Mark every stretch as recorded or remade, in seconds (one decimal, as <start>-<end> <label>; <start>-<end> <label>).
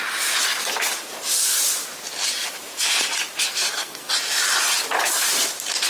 0.0-3.5 recorded; 3.5-4.1 remade; 4.1-5.9 recorded